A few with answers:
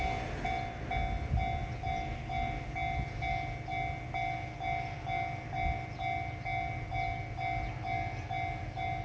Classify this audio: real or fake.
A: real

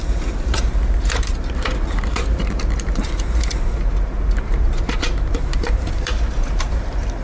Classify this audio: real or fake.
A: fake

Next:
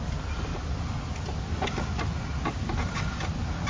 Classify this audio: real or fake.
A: real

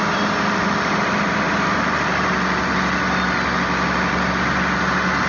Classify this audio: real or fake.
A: real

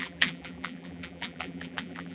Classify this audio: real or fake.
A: fake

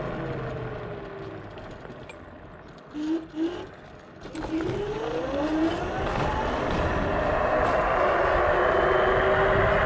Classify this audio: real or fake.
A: real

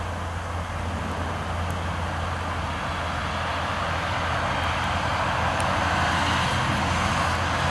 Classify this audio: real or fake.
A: real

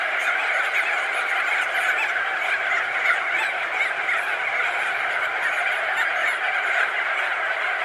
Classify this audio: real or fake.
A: real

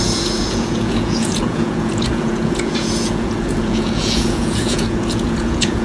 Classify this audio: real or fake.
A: fake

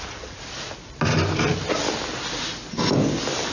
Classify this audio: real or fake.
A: real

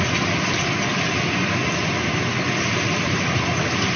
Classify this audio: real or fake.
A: fake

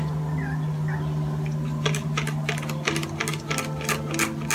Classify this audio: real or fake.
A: real